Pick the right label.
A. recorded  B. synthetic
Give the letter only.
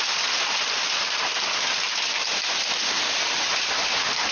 A